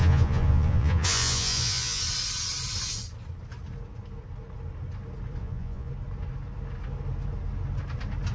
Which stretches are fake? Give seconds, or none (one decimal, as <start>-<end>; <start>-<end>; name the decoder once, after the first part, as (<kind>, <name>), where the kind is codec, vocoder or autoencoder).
0.0-2.0 (vocoder, Vocos); 5.4-5.9